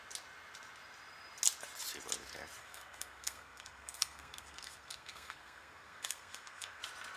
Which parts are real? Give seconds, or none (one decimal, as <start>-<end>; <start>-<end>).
0.0-2.6; 6.8-7.2